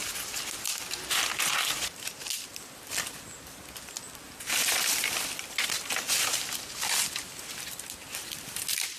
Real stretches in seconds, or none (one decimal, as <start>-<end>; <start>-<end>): 0.0-9.0